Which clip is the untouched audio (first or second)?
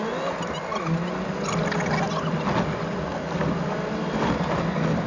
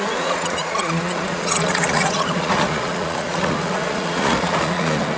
first